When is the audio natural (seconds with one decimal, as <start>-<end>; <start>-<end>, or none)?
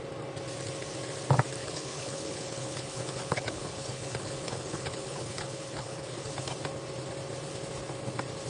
0.0-1.6; 6.3-8.5